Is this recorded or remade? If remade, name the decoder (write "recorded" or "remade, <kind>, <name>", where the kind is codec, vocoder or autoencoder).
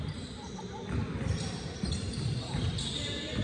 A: recorded